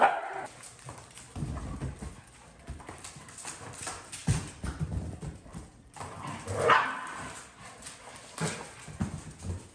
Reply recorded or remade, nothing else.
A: recorded